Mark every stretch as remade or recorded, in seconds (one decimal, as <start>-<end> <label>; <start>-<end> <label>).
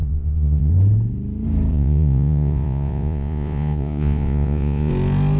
0.0-0.7 remade; 0.7-1.7 recorded; 1.7-4.9 remade; 4.9-5.4 recorded